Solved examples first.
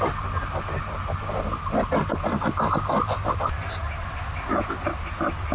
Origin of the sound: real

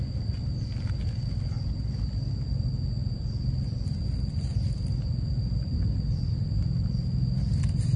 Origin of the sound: real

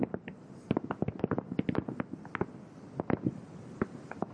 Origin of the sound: real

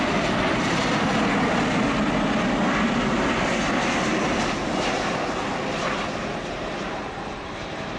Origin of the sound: real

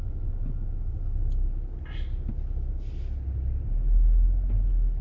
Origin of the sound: real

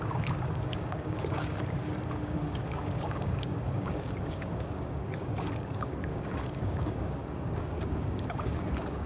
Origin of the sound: fake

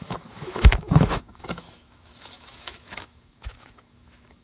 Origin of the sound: fake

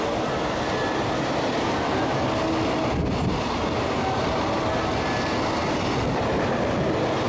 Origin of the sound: real